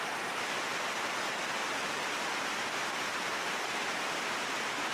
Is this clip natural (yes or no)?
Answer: yes